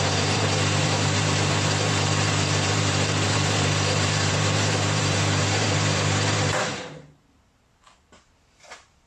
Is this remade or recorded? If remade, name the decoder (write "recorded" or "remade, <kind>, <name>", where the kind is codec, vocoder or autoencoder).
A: remade, vocoder, BigVGAN v2